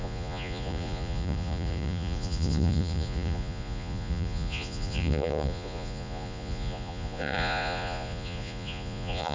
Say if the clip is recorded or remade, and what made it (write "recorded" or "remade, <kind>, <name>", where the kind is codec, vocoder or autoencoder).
remade, vocoder, Vocos